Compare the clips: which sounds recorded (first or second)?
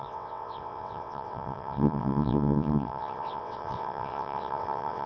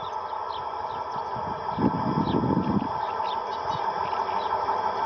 second